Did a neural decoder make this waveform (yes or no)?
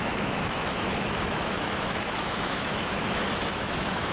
yes